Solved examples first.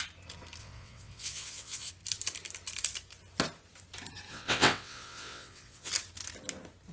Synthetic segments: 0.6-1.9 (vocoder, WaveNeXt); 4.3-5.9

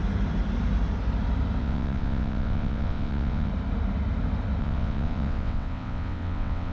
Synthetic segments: 1.6-3.5 (vocoder, WaveNeXt); 4.6-6.7